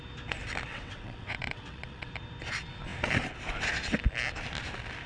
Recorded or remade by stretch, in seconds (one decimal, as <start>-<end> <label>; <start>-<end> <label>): 0.0-0.7 recorded; 0.7-2.1 remade; 2.1-5.1 recorded